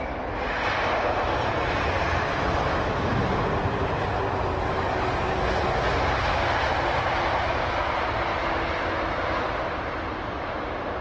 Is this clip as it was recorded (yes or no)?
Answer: yes